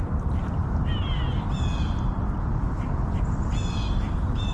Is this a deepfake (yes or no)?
no